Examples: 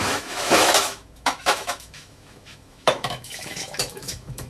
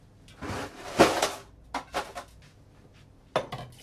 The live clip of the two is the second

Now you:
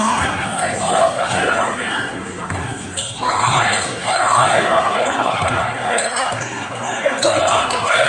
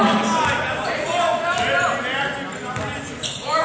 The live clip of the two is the second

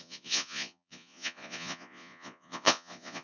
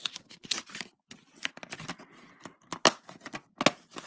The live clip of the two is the second